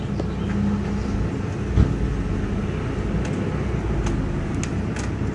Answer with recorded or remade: recorded